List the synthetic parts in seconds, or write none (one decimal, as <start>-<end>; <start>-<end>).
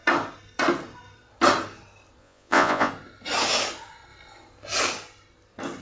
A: 2.2-2.9